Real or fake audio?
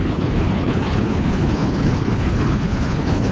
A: fake